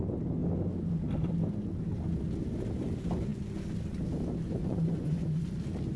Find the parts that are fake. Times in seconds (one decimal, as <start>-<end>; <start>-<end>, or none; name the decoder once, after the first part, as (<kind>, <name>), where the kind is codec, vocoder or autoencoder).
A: 4.6-5.4 (vocoder, Vocos)